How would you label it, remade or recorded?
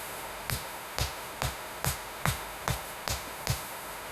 remade